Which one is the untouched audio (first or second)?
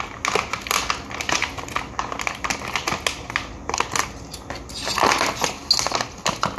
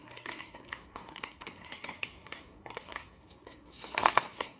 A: first